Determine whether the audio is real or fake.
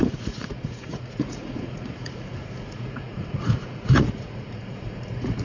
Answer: fake